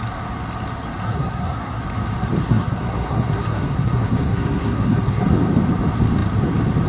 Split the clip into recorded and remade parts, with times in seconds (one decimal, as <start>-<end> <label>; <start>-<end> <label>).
0.0-1.0 recorded; 1.0-1.8 remade; 1.8-2.4 recorded; 2.4-5.3 remade; 5.3-6.9 recorded